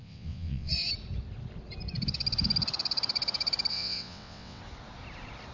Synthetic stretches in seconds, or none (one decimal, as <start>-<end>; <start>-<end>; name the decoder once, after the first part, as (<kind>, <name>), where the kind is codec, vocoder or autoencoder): 0.0-0.7 (vocoder, WaveNeXt); 3.7-4.6